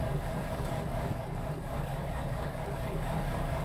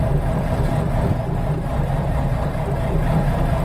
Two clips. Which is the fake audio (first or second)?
first